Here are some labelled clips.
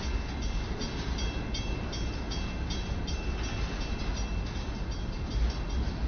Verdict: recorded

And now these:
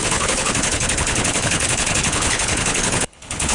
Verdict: remade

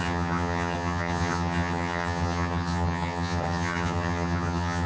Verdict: remade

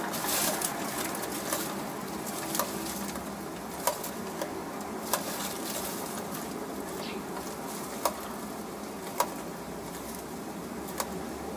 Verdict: recorded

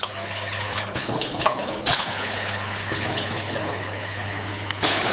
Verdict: remade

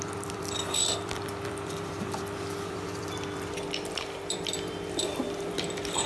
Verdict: remade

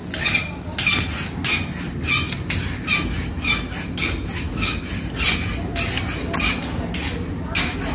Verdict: recorded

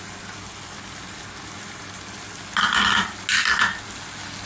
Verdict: recorded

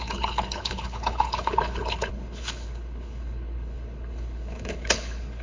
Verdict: remade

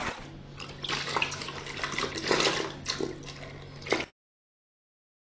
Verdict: recorded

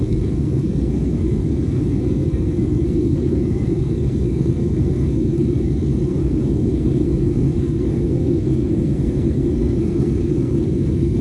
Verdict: remade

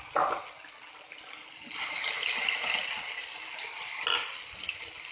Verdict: recorded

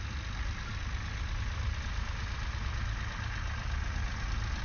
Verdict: recorded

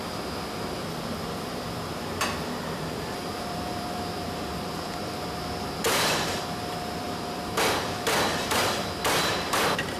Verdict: remade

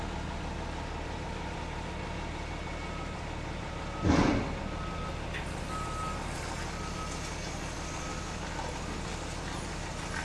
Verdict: recorded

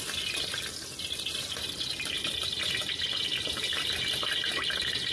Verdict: recorded